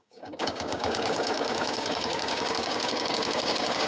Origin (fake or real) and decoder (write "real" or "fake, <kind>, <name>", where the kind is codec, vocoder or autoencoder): fake, codec, DAC